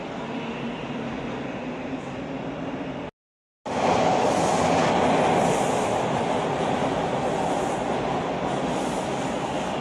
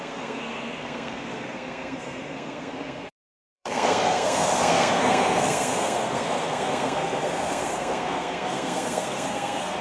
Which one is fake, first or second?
second